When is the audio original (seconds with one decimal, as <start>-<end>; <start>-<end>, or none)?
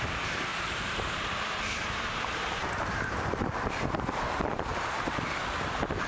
0.0-0.5; 4.1-4.7; 5.4-6.1